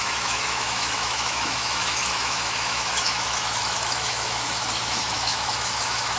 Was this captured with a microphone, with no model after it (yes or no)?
no